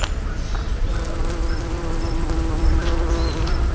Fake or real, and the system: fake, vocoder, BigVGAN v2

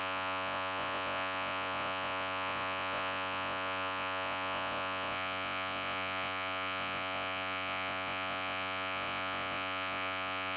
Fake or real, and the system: fake, vocoder, Vocos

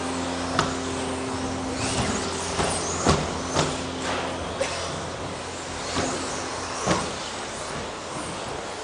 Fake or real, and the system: real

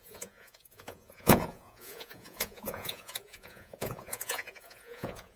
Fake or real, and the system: fake, vocoder, Vocos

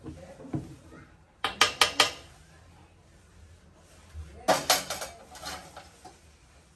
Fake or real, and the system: real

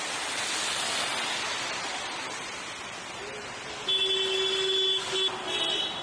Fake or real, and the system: real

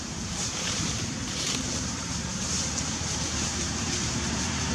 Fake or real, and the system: fake, vocoder, BigVGAN v2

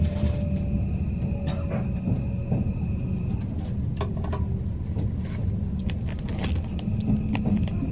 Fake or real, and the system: real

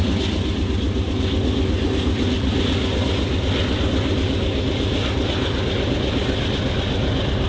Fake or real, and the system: real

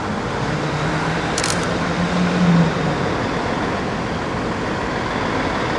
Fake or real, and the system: real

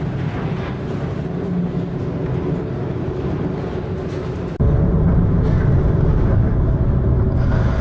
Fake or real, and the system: real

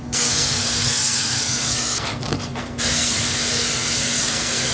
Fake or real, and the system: fake, codec, SNAC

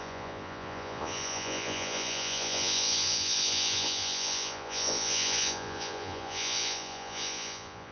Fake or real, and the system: fake, vocoder, Vocos